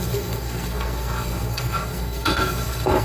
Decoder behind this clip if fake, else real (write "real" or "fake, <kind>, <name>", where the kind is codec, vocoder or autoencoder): fake, codec, SNAC